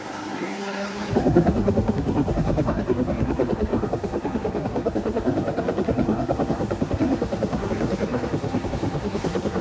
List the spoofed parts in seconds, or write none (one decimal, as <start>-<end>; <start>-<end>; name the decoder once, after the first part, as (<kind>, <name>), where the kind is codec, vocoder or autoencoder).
0.0-9.6 (codec, SNAC)